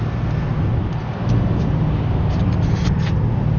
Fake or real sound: real